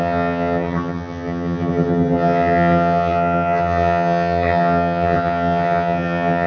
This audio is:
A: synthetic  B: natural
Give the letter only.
A